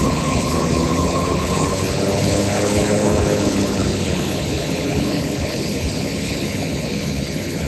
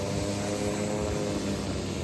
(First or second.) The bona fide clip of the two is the second